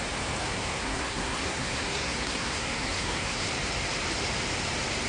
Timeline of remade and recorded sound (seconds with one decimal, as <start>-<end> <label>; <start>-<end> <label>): 0.0-0.4 recorded; 0.4-3.5 remade; 3.5-5.1 recorded